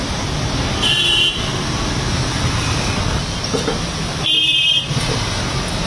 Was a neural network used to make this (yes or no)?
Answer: yes